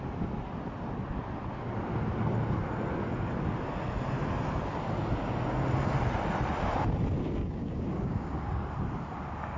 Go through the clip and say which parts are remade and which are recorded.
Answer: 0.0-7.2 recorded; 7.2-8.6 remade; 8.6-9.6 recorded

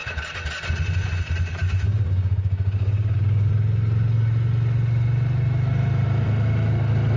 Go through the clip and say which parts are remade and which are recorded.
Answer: 0.0-1.6 recorded; 1.6-3.5 remade; 3.5-7.2 recorded

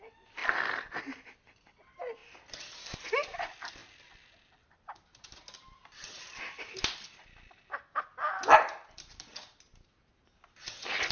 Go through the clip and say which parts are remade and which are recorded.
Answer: 0.0-11.1 recorded